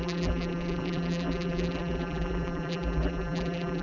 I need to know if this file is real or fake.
fake